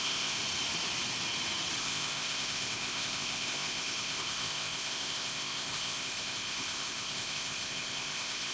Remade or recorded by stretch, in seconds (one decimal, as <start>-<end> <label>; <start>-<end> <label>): 0.0-0.4 remade; 0.4-1.8 recorded; 1.8-8.5 remade